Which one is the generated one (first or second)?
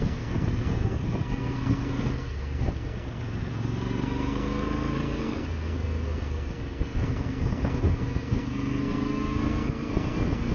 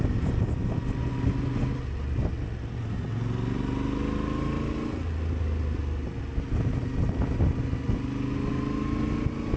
first